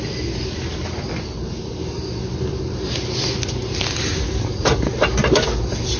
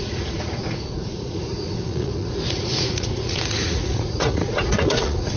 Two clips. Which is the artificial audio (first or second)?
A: second